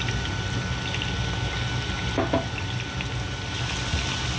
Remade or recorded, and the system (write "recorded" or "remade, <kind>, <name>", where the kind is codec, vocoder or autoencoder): recorded